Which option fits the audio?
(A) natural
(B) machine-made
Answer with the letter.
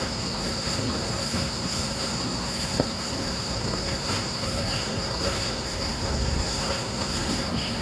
B